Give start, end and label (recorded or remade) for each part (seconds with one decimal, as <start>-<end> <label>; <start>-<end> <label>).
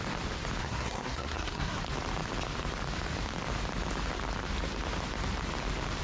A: 0.0-0.6 recorded; 0.6-1.8 remade; 1.8-6.0 recorded